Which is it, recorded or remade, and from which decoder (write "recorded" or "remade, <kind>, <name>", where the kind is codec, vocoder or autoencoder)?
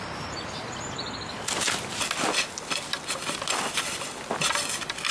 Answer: recorded